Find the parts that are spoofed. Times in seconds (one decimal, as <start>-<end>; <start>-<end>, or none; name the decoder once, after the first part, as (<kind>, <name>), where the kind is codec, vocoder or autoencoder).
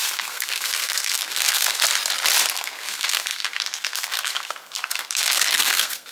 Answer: 0.0-1.8 (codec, SNAC); 2.5-6.1